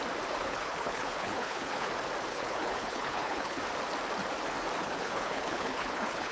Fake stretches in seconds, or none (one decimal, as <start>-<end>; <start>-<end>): 0.4-1.9; 2.3-3.6; 4.8-6.3